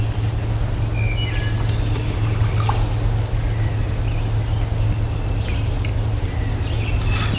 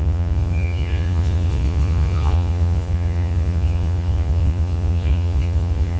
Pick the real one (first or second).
first